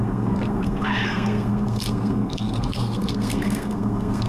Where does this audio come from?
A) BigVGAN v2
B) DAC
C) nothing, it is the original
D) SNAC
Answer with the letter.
D